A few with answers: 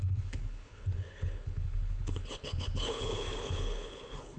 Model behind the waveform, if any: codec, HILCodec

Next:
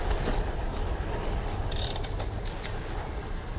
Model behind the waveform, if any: none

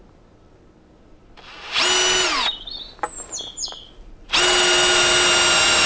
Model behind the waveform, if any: none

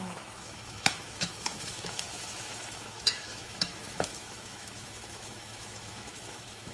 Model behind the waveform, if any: autoencoder, DAC-VAE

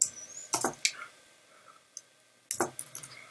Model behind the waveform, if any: none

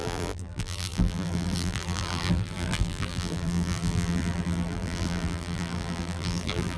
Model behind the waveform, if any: vocoder, BigVGAN v2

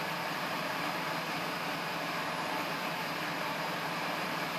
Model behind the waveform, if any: vocoder, BigVGAN v2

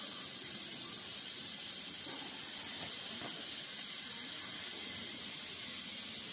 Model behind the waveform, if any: none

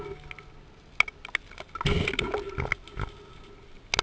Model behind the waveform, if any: none